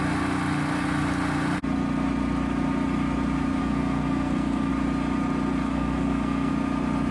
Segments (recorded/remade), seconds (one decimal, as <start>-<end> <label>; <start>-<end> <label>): 0.0-3.6 recorded; 3.6-4.7 remade; 4.7-5.6 recorded; 5.6-6.5 remade; 6.5-7.1 recorded